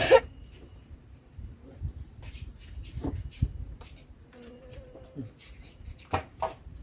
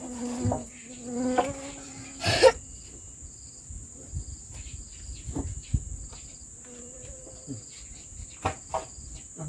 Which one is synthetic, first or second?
first